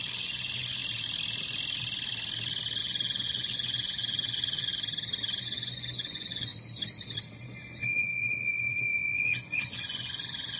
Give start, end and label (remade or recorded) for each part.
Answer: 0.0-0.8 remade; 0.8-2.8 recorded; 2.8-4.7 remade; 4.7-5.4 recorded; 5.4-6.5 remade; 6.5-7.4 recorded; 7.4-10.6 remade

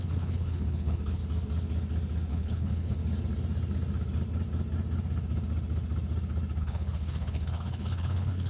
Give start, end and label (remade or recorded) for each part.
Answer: 0.0-1.2 remade; 1.2-2.3 recorded; 2.3-3.0 remade; 3.0-6.6 recorded; 6.6-8.5 remade

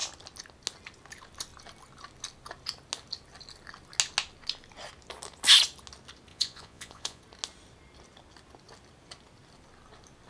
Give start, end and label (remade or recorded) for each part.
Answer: 0.0-6.3 recorded; 6.3-7.2 remade; 7.2-10.3 recorded

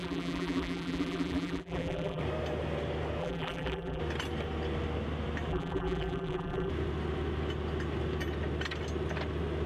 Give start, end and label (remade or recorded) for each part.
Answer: 0.0-2.2 remade; 2.2-3.2 recorded; 3.2-4.0 remade; 4.0-5.5 recorded; 5.5-6.7 remade; 6.7-9.7 recorded

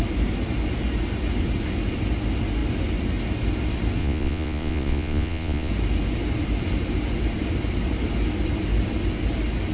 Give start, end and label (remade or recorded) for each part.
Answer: 0.0-4.0 recorded; 4.0-5.7 remade; 5.7-9.7 recorded

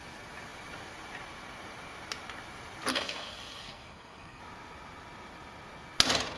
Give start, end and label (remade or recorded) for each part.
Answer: 0.0-2.9 recorded; 2.9-4.4 remade; 4.4-6.4 recorded